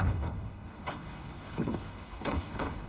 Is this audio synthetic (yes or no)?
yes